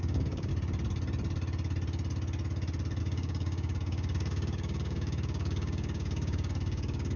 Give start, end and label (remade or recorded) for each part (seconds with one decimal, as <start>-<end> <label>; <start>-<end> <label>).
0.0-0.5 remade; 0.5-3.0 recorded; 3.0-7.2 remade